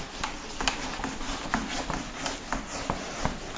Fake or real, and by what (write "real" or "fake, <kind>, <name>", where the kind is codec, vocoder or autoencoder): real